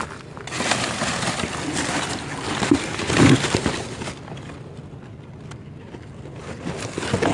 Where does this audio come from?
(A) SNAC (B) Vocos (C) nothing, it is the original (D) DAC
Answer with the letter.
C